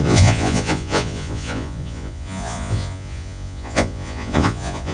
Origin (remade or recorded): remade